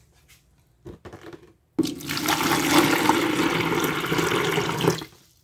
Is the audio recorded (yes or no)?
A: yes